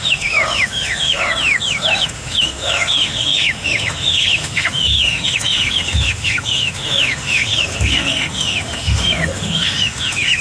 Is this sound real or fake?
fake